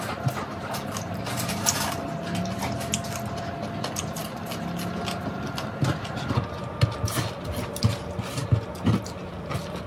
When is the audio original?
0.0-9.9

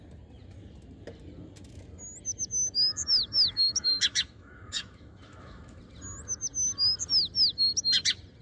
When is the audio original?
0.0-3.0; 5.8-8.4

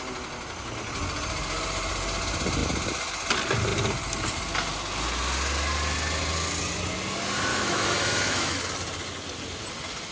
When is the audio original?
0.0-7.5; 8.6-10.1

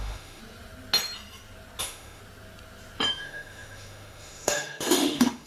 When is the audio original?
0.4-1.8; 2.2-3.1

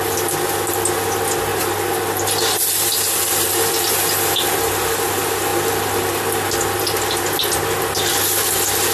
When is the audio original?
0.0-8.9

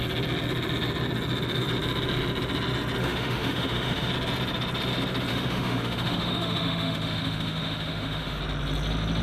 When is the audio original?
0.0-3.0; 4.1-5.3; 8.4-9.2

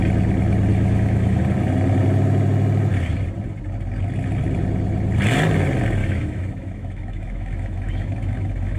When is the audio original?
0.0-0.7; 1.4-6.0

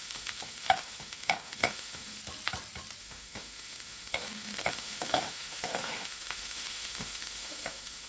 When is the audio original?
2.2-3.0